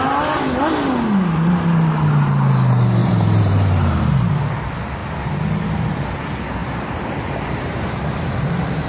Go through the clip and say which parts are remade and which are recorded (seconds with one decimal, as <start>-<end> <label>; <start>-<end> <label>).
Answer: 0.0-3.0 recorded; 3.0-4.0 remade; 4.0-6.6 recorded; 6.6-8.0 remade; 8.0-8.9 recorded